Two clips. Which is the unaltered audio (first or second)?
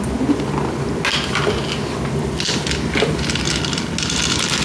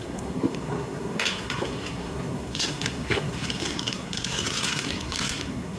first